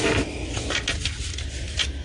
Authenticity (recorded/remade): recorded